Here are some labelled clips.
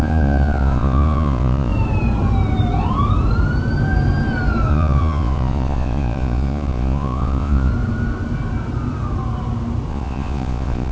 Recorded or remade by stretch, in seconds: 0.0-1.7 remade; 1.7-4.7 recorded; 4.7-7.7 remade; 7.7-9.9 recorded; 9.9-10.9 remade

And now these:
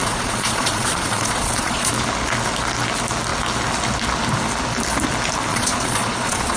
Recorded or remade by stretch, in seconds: 0.0-1.9 remade; 1.9-5.5 recorded; 5.5-6.6 remade

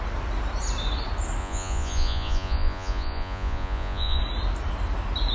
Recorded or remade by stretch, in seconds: 0.0-1.4 recorded; 1.4-4.2 remade; 4.2-5.3 recorded

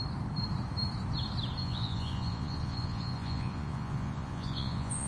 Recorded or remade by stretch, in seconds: 0.0-1.6 recorded; 1.6-5.1 remade

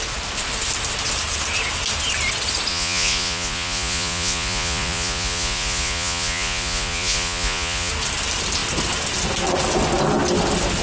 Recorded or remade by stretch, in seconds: 0.0-2.7 recorded; 2.7-7.9 remade; 7.9-10.8 recorded

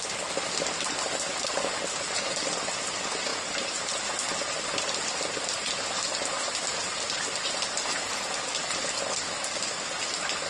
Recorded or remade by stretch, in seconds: 0.0-10.5 recorded

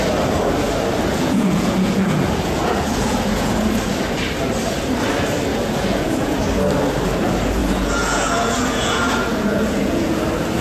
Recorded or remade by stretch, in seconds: 0.0-1.1 recorded; 1.1-3.7 remade; 3.7-5.5 recorded; 5.5-6.4 remade; 6.4-7.6 recorded; 7.6-10.2 remade; 10.2-10.6 recorded

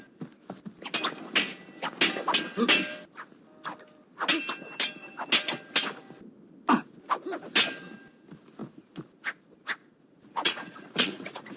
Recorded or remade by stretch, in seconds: 0.0-9.8 recorded; 9.8-11.6 remade